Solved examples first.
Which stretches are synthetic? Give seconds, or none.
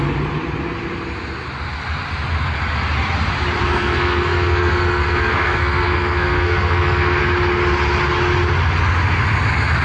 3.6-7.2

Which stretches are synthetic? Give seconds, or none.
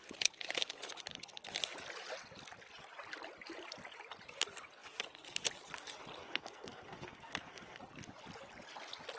6.2-7.8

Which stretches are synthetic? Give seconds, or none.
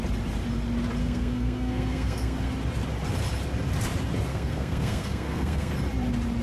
1.0-2.5; 4.3-5.7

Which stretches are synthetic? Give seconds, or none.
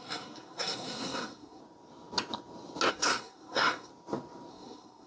0.0-1.6; 2.9-3.9; 4.5-5.1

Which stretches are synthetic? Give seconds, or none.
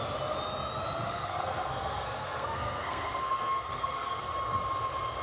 1.1-4.2